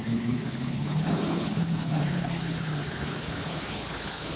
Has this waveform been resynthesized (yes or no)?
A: yes